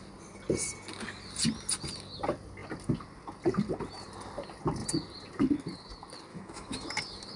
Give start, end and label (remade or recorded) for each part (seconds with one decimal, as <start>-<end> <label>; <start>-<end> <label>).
0.0-6.3 recorded; 6.3-6.9 remade; 6.9-7.4 recorded